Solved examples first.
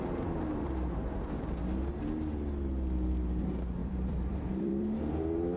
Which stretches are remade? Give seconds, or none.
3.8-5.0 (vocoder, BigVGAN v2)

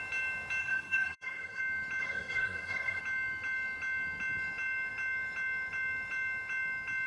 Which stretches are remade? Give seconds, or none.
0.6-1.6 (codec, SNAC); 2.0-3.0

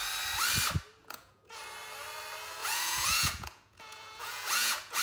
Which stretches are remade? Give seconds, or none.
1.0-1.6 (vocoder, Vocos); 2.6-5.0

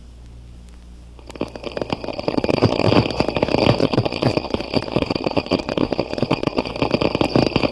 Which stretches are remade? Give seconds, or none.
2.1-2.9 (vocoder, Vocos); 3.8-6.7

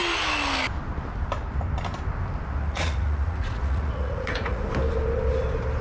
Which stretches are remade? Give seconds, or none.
2.6-4.6 (vocoder, Vocos)

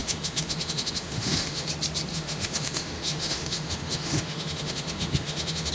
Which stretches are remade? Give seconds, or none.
0.0-1.7 (autoencoder, DAC-VAE); 2.1-5.7